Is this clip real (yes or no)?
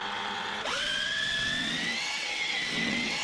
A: no